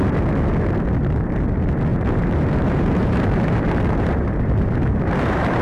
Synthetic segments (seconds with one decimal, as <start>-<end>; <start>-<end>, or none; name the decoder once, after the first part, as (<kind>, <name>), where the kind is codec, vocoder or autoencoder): 1.9-5.6 (vocoder, BigVGAN v2)